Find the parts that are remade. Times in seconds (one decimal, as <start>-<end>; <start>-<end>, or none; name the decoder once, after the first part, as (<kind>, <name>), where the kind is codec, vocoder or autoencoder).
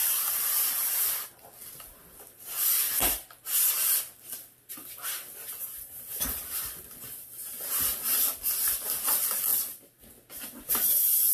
none